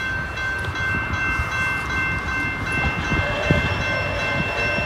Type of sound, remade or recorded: recorded